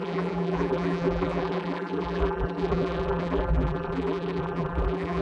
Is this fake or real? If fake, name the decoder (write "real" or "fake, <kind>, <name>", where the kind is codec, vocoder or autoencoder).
fake, vocoder, BigVGAN v2